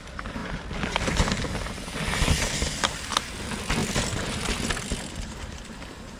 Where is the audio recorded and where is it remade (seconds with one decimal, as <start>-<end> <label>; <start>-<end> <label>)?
0.0-3.8 recorded; 3.8-4.6 remade; 4.6-6.2 recorded